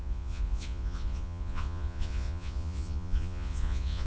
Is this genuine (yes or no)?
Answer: no